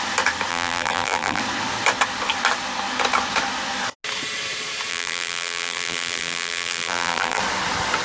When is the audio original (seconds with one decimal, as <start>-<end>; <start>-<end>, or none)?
0.0-0.5; 1.4-4.9; 7.4-8.0